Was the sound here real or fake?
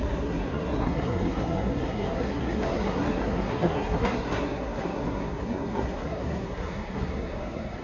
fake